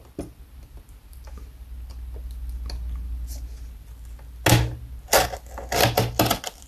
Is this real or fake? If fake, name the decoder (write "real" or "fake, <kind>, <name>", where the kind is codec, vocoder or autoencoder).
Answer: real